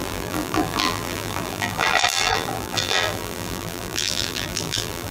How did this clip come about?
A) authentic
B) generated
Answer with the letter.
B